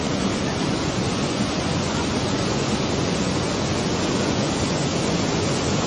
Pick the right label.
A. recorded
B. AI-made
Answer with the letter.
B